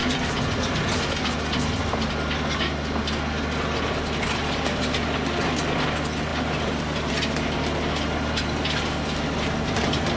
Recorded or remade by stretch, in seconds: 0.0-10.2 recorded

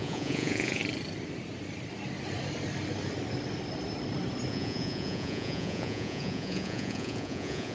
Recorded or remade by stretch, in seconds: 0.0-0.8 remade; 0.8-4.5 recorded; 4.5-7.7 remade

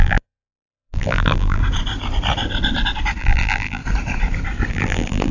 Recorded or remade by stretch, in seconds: 0.0-1.6 remade; 1.6-3.2 recorded; 3.2-3.8 remade; 3.8-4.7 recorded; 4.7-5.3 remade

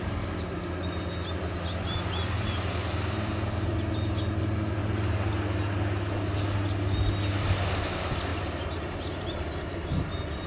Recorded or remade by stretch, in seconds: 0.0-8.3 recorded; 8.3-9.5 remade; 9.5-10.5 recorded